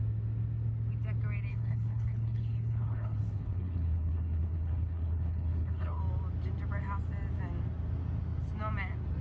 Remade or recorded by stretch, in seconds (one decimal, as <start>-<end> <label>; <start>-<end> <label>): 0.0-1.5 recorded; 1.5-6.0 remade; 6.0-9.2 recorded